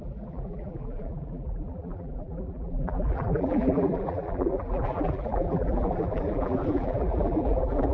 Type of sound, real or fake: fake